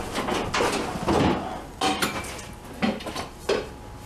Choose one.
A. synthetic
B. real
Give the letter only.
B